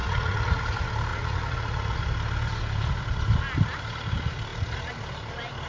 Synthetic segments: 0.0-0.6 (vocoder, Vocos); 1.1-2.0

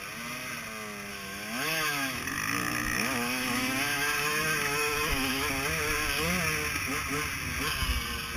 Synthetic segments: 1.1-5.5 (autoencoder, DAC-VAE)